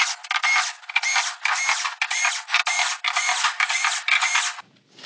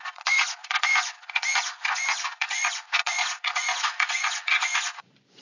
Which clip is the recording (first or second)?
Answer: first